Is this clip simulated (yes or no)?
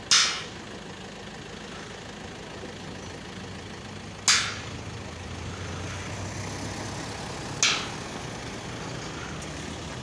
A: no